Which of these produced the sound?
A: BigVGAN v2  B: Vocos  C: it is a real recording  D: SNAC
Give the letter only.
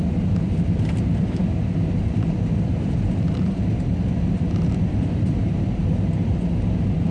A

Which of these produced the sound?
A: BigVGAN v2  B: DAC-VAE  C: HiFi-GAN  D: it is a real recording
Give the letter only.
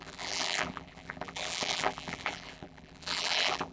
A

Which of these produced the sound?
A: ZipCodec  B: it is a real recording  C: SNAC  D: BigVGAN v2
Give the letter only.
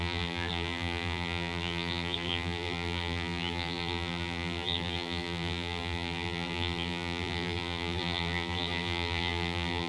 D